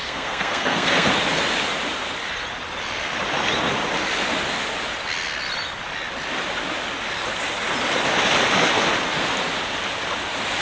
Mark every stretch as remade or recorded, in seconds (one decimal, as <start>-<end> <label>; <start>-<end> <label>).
0.0-1.1 remade; 1.1-10.6 recorded